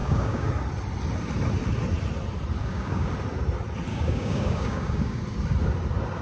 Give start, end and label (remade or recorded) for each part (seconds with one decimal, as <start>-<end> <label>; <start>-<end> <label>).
0.0-0.5 remade; 0.5-2.6 recorded; 2.6-3.1 remade; 3.1-3.9 recorded; 3.9-5.2 remade; 5.2-6.2 recorded